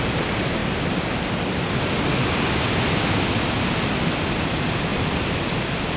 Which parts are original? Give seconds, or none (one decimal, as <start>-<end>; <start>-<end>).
none